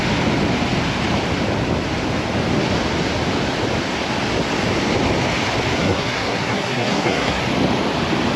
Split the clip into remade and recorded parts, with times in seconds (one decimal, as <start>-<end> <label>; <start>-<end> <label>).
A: 0.0-5.8 recorded; 5.8-7.4 remade; 7.4-8.4 recorded